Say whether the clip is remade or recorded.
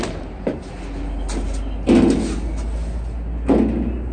recorded